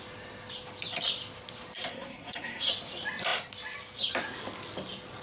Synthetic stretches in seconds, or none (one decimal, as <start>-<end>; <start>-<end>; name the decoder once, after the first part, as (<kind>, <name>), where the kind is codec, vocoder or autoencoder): 1.9-2.7 (codec, SNAC)